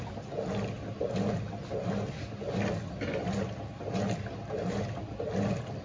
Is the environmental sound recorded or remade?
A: recorded